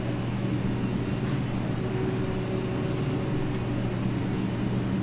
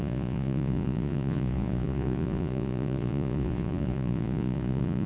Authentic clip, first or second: first